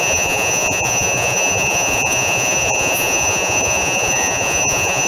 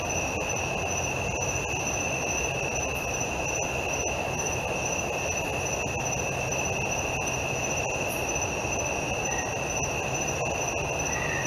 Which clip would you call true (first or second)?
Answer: second